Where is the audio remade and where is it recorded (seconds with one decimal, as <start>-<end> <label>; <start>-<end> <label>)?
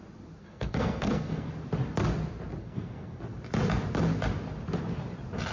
0.0-0.4 recorded; 0.4-1.5 remade; 1.5-2.6 recorded; 2.6-3.2 remade; 3.2-5.5 recorded